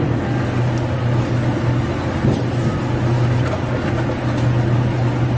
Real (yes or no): yes